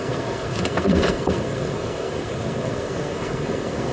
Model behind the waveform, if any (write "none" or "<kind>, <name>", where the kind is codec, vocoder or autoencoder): codec, SNAC